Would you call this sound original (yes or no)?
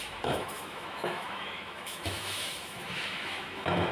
no